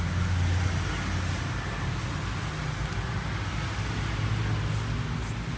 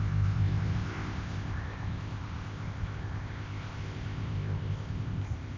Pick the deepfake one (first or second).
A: second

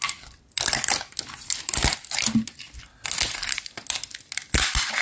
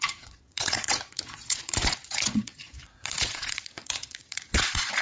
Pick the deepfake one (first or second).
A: second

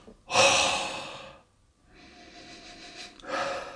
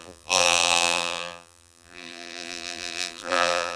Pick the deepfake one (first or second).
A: second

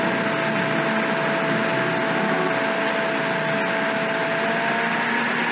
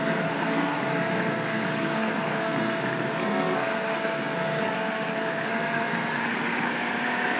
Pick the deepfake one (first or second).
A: second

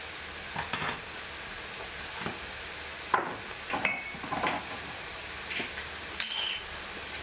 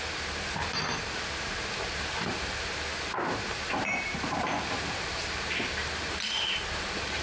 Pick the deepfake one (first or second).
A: second